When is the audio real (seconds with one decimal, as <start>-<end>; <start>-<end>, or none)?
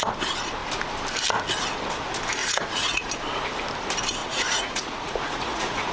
0.0-2.4; 3.1-4.2